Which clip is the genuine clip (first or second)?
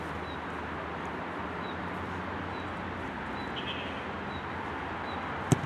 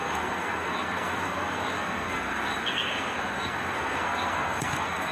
first